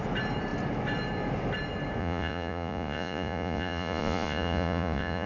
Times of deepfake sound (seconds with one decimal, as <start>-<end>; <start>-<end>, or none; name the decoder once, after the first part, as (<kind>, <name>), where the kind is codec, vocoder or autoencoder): 2.0-5.3 (vocoder, Vocos)